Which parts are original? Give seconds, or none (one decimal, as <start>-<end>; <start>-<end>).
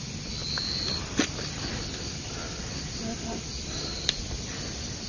0.0-0.4; 2.8-3.5; 4.2-5.1